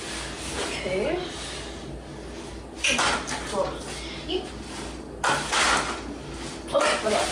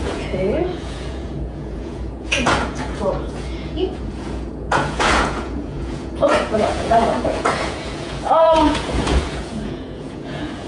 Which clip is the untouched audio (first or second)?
first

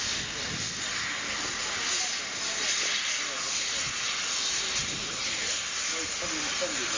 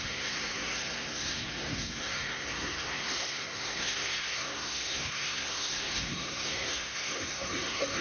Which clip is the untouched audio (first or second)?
first